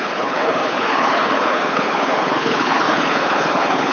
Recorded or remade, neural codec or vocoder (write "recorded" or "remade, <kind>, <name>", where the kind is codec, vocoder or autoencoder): remade, codec, HILCodec